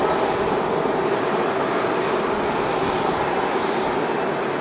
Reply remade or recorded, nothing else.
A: recorded